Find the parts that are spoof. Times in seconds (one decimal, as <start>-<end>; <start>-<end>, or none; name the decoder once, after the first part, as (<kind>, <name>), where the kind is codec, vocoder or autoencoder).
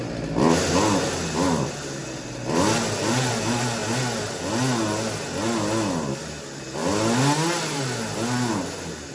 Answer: none